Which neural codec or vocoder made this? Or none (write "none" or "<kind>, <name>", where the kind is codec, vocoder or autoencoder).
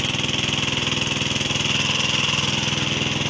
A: none